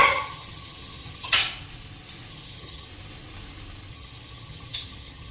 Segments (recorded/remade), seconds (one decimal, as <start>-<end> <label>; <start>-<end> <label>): 0.0-1.4 remade; 1.4-2.3 recorded; 2.3-2.9 remade; 2.9-3.9 recorded; 3.9-5.3 remade